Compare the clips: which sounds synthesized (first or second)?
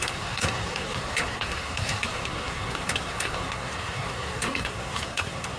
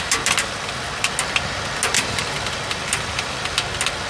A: first